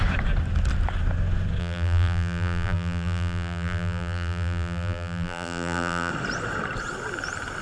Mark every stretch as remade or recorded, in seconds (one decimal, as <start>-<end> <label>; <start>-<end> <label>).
0.0-1.6 recorded; 1.6-6.1 remade; 6.1-7.6 recorded